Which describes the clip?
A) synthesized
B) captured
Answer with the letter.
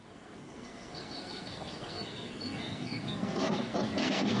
A